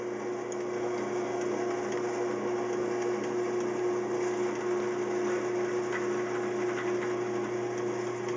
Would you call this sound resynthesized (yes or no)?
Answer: no